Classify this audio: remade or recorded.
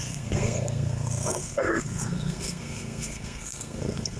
remade